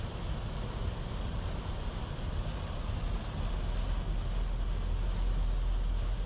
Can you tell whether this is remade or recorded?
recorded